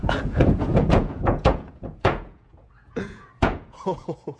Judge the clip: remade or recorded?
remade